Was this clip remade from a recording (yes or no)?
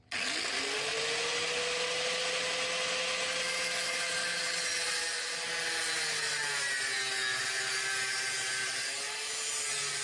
no